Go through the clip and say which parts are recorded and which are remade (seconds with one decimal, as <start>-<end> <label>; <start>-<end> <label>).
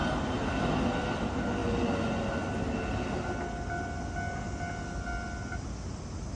0.0-6.4 recorded